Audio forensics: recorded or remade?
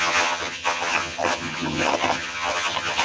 remade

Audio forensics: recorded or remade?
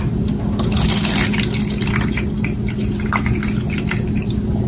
recorded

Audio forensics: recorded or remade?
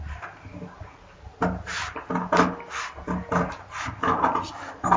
recorded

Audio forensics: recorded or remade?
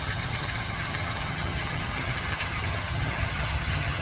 remade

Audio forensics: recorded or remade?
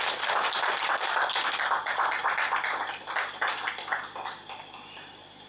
recorded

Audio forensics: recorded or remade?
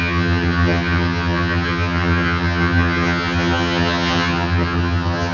remade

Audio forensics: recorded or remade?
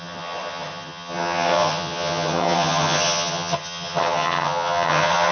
remade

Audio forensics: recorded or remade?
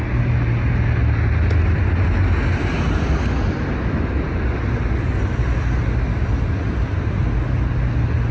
recorded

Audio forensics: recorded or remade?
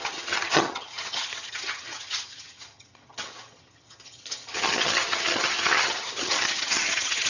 remade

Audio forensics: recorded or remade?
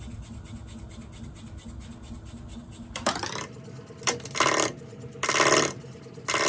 recorded